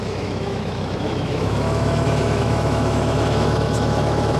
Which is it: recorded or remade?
remade